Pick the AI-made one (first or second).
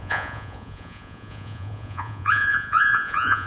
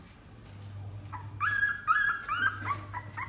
first